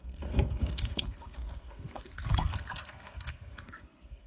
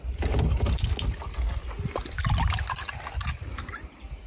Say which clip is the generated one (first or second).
first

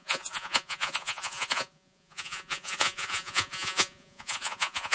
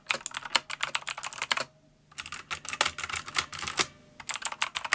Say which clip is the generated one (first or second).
first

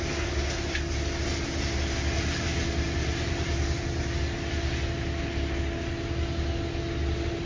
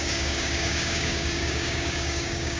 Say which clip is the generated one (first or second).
second